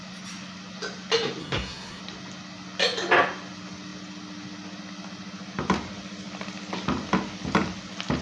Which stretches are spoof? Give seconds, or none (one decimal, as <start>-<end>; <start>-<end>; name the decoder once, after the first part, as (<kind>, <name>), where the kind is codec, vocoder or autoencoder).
1.4-2.0 (codec, SNAC)